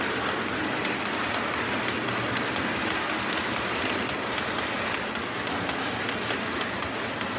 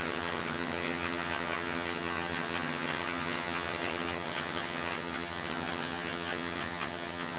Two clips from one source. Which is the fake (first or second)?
second